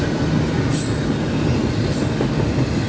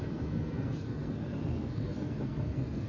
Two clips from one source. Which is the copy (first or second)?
second